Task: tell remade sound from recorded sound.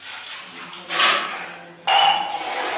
recorded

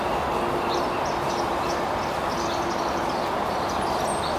recorded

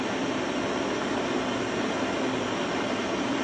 recorded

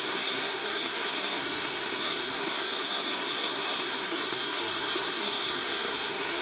remade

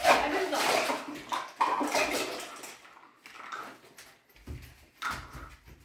recorded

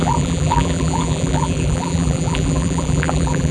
remade